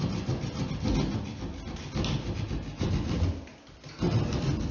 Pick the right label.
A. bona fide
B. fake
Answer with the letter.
A